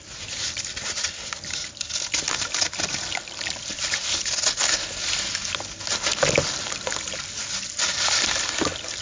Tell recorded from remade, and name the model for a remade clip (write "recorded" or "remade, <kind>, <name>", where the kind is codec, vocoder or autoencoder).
recorded